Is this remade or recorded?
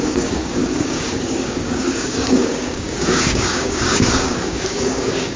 remade